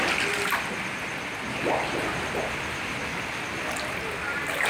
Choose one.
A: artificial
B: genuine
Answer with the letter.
B